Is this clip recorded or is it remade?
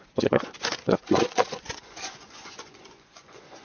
remade